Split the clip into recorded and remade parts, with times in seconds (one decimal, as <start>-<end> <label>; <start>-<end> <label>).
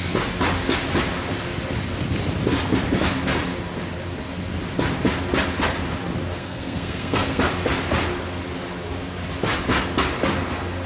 0.0-6.4 recorded; 6.4-7.4 remade; 7.4-10.9 recorded